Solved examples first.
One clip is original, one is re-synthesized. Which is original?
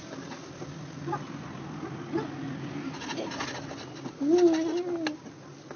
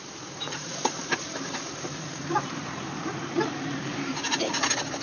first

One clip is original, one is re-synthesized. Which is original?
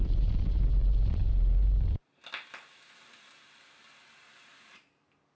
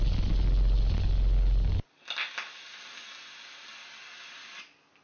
second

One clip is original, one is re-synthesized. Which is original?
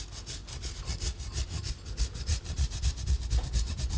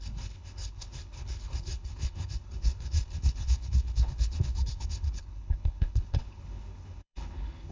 first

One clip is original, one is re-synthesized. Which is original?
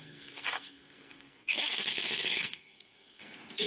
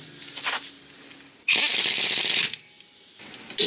second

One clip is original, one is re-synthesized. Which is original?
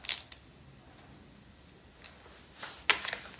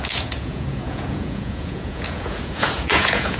first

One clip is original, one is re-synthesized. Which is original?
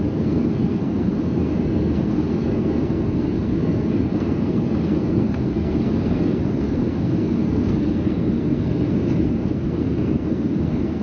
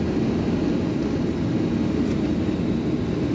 second